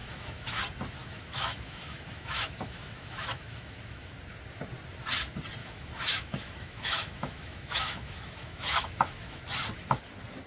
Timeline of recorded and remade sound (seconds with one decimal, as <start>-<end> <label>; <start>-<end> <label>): 0.0-0.6 remade; 0.6-1.0 recorded; 1.0-4.1 remade; 4.1-5.6 recorded; 5.6-9.4 remade; 9.4-10.5 recorded